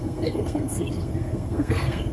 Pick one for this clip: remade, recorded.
remade